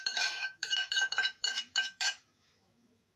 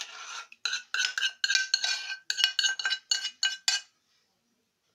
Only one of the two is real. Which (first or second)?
second